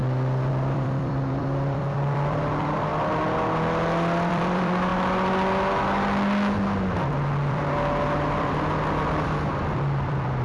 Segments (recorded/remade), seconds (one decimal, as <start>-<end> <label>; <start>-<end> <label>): 0.0-0.5 recorded; 0.5-2.9 remade; 2.9-4.3 recorded; 4.3-4.9 remade; 4.9-7.5 recorded; 7.5-10.4 remade